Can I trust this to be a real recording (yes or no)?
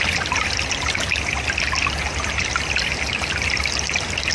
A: yes